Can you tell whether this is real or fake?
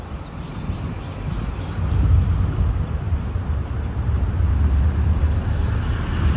real